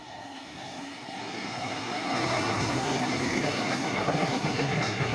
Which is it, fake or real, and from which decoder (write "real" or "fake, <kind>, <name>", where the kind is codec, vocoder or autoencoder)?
fake, codec, SNAC